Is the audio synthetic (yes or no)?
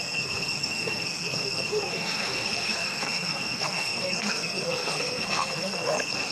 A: yes